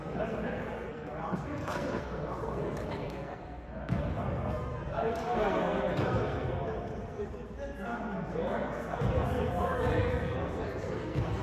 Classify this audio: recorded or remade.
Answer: remade